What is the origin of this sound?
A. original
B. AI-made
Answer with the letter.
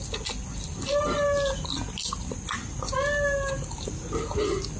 A